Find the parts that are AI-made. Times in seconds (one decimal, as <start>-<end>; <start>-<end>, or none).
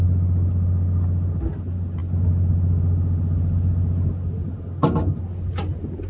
none